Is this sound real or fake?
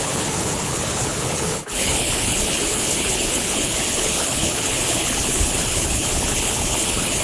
fake